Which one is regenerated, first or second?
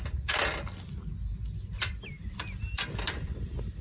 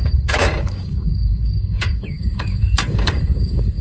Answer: second